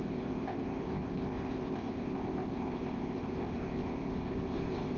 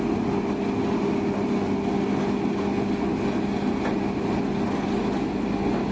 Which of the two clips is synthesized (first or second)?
first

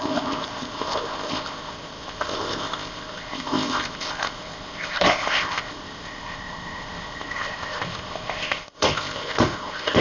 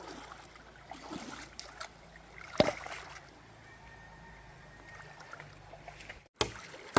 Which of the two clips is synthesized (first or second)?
first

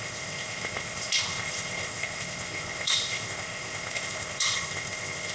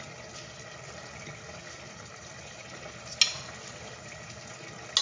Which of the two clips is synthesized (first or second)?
first